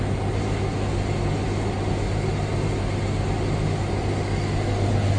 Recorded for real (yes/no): yes